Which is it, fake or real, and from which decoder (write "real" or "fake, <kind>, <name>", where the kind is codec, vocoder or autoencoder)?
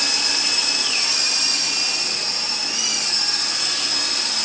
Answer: real